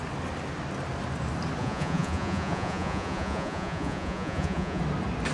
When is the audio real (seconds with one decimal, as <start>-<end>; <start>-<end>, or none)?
0.0-1.6; 4.8-5.3